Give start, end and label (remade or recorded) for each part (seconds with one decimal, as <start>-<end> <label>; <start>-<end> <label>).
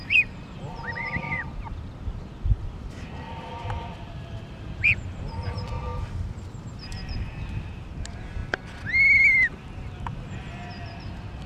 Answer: 0.0-5.9 remade; 5.9-6.6 recorded; 6.6-8.4 remade; 8.4-10.5 recorded; 10.5-11.5 remade